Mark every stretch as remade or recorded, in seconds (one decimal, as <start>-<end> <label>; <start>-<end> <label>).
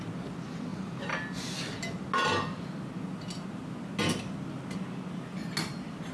0.0-6.1 recorded